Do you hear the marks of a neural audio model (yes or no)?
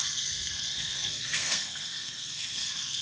yes